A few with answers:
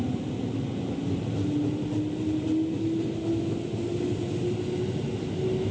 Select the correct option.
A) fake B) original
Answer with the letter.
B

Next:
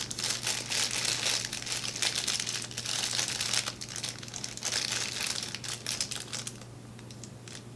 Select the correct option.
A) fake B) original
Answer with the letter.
B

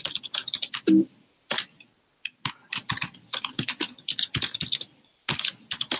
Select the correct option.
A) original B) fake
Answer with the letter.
A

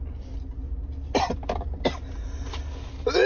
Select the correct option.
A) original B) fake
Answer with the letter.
A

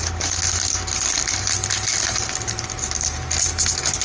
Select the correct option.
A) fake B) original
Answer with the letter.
B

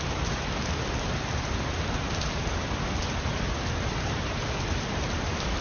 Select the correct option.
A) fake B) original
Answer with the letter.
B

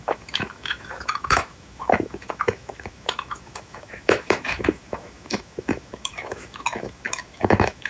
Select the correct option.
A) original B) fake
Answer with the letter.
B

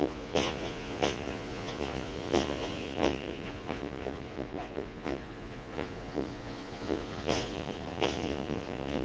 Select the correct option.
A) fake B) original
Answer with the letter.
A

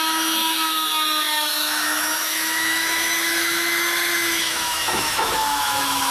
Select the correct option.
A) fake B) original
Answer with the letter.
A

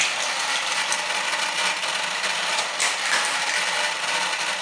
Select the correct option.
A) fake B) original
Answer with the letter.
B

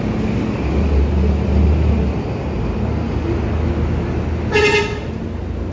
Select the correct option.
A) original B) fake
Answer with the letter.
A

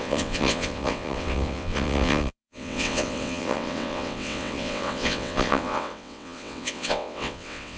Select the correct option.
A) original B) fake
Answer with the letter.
B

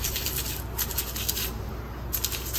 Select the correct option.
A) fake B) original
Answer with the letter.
B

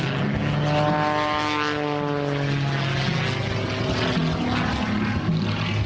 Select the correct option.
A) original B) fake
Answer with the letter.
A